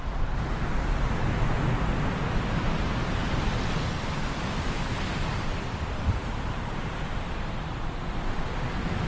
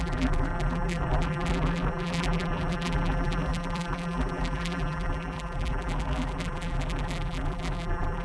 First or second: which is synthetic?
second